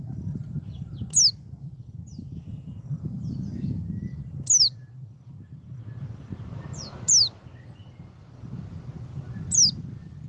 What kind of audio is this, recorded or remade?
recorded